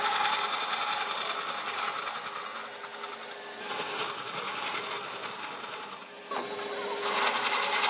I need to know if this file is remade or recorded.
recorded